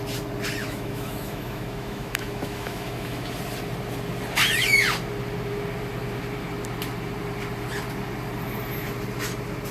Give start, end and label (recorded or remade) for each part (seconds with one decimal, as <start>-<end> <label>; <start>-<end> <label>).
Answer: 0.0-0.6 recorded; 0.6-3.3 remade; 3.3-9.7 recorded